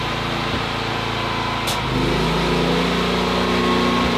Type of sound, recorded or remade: recorded